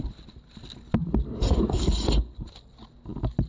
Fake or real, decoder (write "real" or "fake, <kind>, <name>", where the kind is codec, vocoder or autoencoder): real